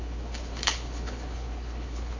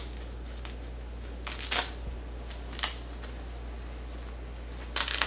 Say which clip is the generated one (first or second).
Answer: first